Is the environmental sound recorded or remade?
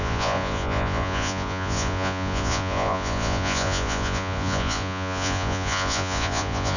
remade